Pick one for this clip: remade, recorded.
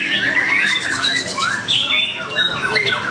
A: remade